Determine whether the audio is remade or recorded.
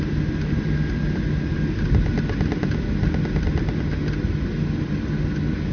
recorded